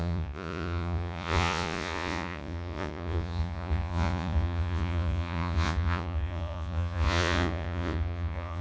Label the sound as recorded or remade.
remade